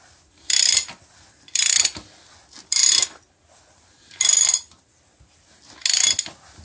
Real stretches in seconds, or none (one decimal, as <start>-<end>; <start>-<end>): 0.0-6.6